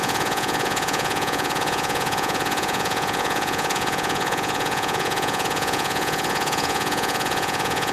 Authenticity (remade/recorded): remade